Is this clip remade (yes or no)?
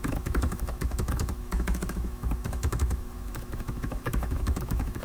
yes